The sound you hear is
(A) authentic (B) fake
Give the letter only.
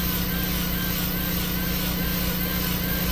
A